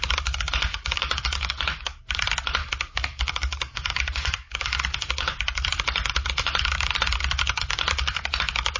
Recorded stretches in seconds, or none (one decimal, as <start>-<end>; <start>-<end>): 0.0-0.7; 2.0-2.6; 5.4-8.8